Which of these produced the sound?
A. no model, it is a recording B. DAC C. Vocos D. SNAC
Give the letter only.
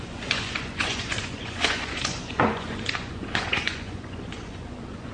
C